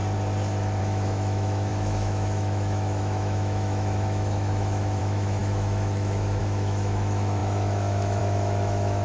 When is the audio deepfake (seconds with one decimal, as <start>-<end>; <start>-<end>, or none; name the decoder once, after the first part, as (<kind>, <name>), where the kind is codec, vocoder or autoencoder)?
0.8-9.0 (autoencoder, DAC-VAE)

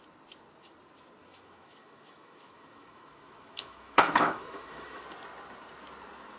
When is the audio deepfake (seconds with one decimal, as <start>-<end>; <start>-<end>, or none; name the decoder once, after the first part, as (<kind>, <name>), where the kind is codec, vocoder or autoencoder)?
1.2-5.0 (autoencoder, DAC-VAE)

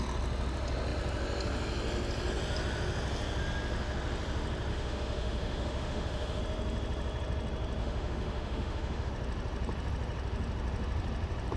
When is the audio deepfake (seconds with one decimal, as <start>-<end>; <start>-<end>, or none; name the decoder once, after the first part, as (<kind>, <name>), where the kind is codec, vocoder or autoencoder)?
4.7-6.4 (autoencoder, DAC-VAE); 7.8-9.1